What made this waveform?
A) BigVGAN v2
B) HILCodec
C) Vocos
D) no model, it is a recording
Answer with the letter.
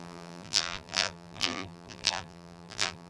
A